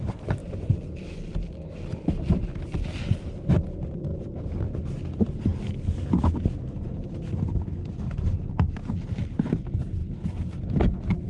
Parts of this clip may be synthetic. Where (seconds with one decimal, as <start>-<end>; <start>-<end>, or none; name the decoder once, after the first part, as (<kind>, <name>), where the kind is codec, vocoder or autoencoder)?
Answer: none